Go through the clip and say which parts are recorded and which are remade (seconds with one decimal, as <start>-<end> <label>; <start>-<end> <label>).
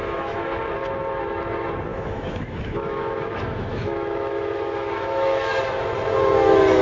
0.0-0.6 remade; 0.6-1.9 recorded; 1.9-5.6 remade; 5.6-6.8 recorded